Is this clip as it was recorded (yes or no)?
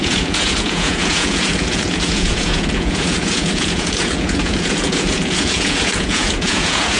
no